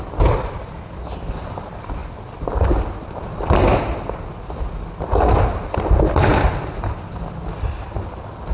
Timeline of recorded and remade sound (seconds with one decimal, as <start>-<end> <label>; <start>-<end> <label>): 0.0-8.5 recorded